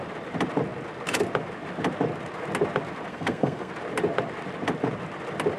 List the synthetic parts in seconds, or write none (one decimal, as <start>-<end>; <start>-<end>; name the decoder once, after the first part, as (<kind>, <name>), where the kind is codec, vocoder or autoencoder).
3.1-3.7 (codec, SNAC)